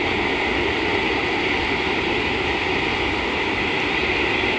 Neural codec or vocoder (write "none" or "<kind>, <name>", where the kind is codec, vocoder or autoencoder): none